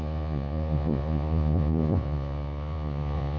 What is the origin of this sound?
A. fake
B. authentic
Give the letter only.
A